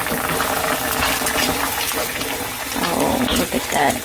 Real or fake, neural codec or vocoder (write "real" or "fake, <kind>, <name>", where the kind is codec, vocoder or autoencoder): real